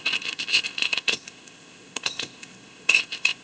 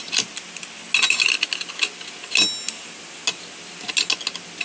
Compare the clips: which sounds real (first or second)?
second